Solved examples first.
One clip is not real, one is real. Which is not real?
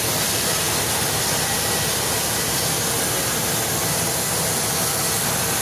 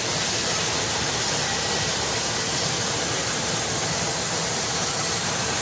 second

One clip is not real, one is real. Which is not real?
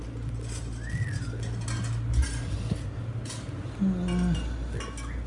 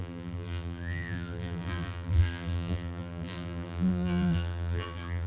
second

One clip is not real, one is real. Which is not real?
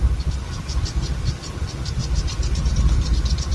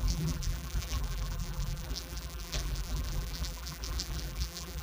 second